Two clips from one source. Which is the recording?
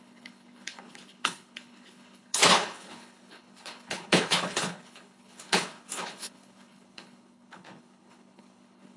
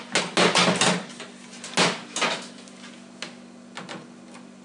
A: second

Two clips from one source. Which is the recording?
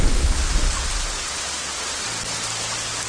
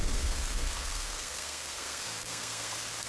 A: first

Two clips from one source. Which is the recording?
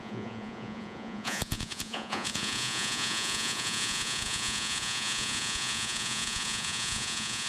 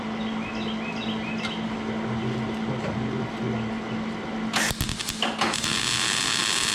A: second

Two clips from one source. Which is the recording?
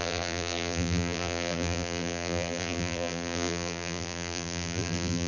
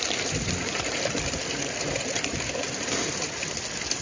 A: second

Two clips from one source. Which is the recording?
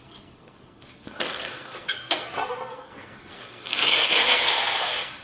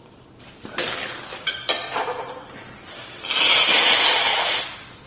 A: second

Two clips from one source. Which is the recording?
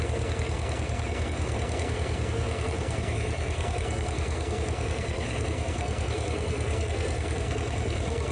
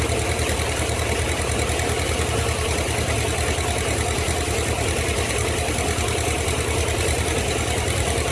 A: second